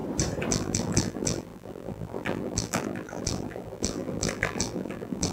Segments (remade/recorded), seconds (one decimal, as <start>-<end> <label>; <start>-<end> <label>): 0.0-0.5 recorded; 0.5-5.3 remade